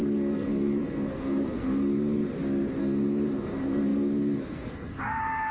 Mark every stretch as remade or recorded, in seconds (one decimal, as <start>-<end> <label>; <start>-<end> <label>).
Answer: 0.0-2.3 remade; 2.3-2.8 recorded; 2.8-5.5 remade